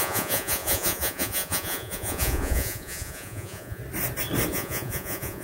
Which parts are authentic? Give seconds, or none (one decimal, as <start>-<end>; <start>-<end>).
3.8-4.5